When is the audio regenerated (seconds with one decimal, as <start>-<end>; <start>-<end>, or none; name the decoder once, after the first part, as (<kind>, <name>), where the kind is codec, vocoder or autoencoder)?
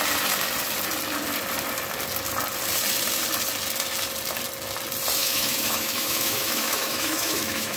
5.2-7.8 (autoencoder, DAC-VAE)